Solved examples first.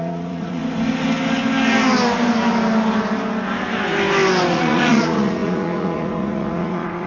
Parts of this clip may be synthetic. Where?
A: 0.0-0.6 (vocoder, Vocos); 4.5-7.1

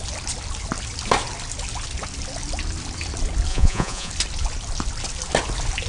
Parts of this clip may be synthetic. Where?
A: 3.5-4.1 (vocoder, Vocos)

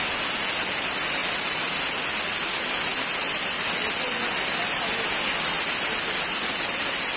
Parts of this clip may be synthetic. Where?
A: none

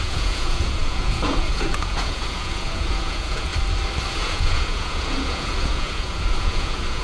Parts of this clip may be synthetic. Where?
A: 0.0-3.5 (vocoder, Vocos); 4.1-7.0